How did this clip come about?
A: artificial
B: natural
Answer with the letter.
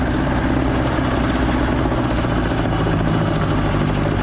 B